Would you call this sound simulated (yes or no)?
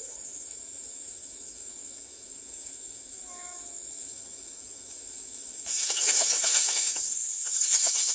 yes